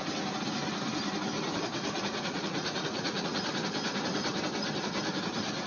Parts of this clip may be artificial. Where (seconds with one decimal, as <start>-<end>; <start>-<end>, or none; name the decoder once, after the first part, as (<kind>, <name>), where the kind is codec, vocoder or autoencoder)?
1.8-3.4 (vocoder, Vocos)